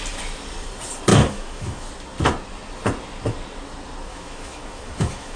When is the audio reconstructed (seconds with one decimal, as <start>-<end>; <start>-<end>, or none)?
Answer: 1.1-1.9; 4.1-5.4

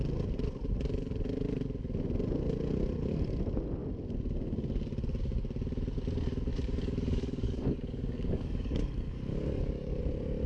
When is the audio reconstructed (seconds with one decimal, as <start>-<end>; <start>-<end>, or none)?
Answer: 6.5-10.0

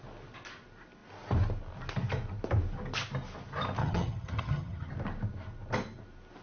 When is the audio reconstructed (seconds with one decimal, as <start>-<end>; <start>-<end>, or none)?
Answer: 3.8-4.9

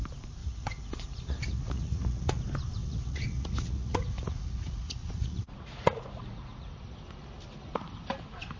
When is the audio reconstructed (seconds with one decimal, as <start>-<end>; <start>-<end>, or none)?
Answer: 0.4-2.4; 2.8-6.7

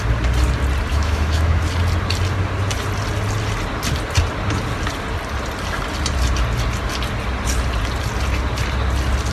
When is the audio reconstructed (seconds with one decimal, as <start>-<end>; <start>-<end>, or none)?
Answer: 0.9-1.6

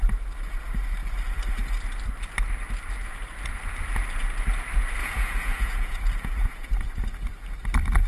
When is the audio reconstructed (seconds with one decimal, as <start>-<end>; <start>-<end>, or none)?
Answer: 5.0-6.7

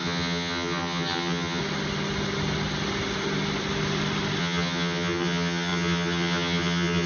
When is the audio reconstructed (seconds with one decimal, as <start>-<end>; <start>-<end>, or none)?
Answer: 0.0-1.6; 4.4-7.1

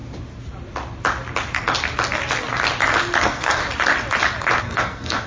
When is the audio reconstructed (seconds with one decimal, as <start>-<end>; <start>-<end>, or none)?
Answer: 3.2-3.6; 4.6-5.3